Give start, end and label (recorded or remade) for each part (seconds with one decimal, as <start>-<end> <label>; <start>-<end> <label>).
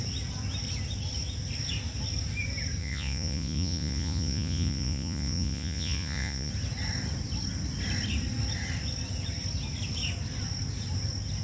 0.0-2.8 recorded; 2.8-6.5 remade; 6.5-11.4 recorded